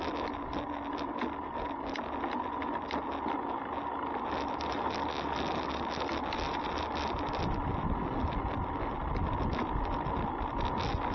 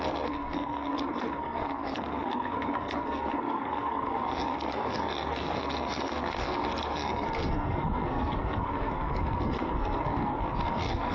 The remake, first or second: second